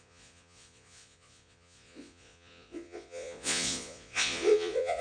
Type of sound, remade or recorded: remade